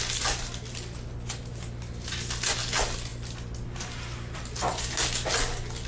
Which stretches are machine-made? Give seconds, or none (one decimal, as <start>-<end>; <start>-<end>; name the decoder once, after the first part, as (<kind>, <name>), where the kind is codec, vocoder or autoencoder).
none